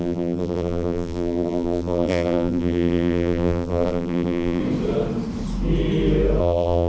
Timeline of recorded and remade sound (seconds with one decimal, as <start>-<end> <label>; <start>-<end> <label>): 0.0-4.6 remade; 4.6-6.4 recorded; 6.4-6.9 remade